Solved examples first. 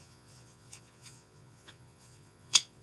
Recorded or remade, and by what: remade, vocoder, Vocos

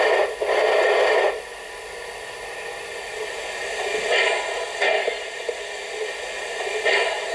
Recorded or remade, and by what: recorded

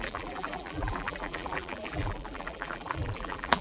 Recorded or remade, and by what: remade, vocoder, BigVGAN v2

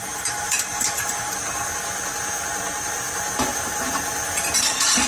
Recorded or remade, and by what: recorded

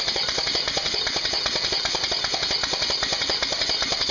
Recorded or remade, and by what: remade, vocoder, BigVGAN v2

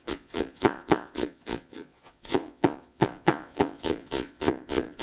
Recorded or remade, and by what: remade, vocoder, Vocos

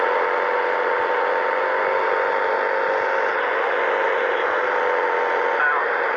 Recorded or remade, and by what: recorded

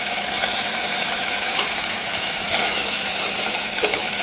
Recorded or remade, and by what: remade, autoencoder, DAC-VAE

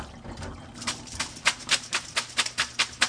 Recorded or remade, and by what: recorded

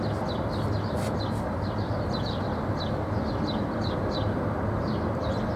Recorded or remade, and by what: recorded